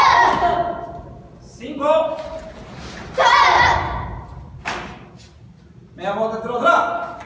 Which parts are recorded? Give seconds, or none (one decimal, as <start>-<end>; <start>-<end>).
0.0-7.3